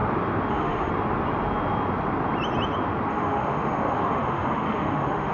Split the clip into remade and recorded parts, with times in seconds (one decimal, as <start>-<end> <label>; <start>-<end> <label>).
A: 0.0-0.5 recorded; 0.5-0.9 remade; 0.9-3.1 recorded; 3.1-5.3 remade